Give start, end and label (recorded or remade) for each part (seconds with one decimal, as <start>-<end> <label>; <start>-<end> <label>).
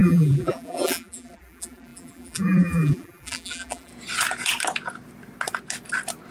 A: 0.0-3.9 remade; 3.9-6.3 recorded